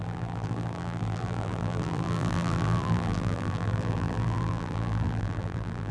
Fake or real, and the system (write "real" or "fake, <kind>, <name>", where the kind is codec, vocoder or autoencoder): fake, vocoder, BigVGAN v2